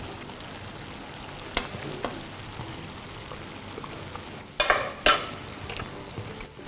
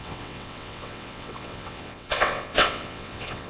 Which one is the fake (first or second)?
second